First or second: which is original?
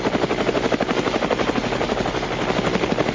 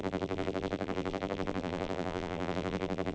first